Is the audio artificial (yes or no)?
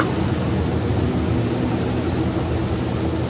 no